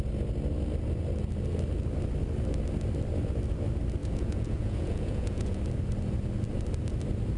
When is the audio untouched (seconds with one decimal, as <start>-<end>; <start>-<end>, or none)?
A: 0.0-4.0; 5.6-7.4